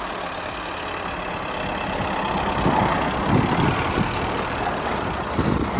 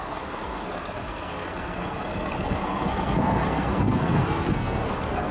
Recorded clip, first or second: first